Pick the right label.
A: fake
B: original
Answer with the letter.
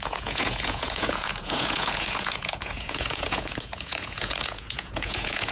A